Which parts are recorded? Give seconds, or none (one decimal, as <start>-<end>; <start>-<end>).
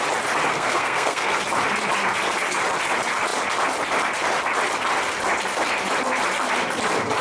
0.0-0.5; 1.4-7.2